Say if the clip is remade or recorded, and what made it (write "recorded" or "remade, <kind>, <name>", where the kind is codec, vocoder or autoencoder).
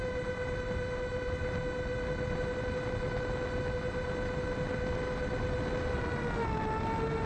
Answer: recorded